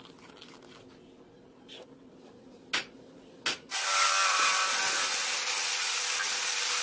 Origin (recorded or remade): recorded